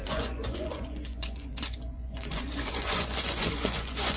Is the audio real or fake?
fake